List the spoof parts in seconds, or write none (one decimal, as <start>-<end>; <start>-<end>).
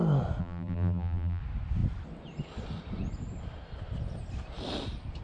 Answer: 0.4-1.4